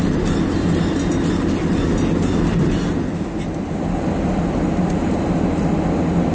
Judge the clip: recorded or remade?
recorded